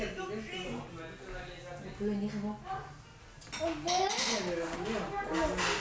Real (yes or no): yes